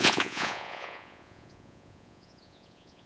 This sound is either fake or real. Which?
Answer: fake